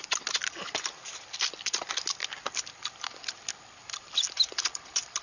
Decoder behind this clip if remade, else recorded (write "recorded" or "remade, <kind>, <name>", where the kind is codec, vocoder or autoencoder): recorded